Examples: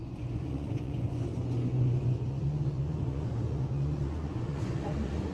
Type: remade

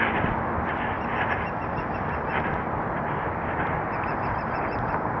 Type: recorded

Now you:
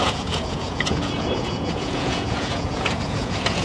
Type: remade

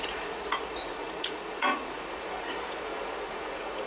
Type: remade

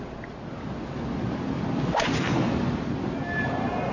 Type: recorded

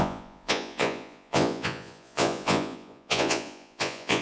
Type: remade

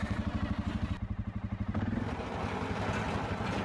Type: recorded